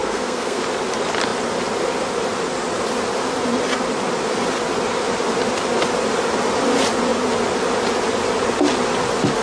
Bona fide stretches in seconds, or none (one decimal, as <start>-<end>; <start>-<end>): 0.6-9.4